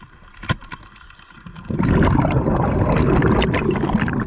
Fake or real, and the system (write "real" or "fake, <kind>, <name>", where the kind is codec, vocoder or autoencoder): real